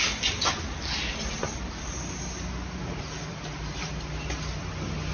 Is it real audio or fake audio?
real